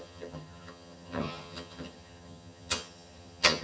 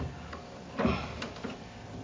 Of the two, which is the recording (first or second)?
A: second